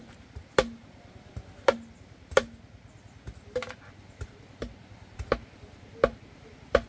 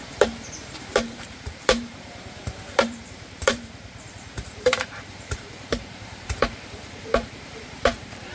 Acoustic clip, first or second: first